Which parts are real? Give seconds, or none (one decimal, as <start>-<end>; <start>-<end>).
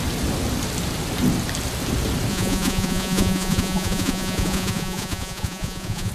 0.0-2.3